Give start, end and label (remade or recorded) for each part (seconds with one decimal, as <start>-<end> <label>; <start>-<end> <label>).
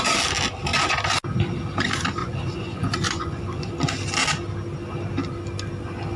0.0-2.2 recorded; 2.2-3.7 remade; 3.7-6.2 recorded